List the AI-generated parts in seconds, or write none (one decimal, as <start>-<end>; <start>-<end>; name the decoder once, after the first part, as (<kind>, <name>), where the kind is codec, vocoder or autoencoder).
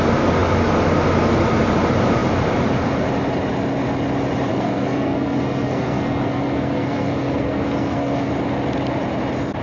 4.5-8.3 (codec, SNAC)